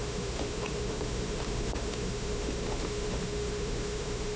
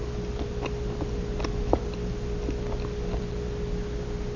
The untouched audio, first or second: second